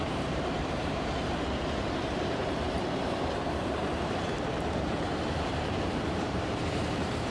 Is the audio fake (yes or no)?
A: yes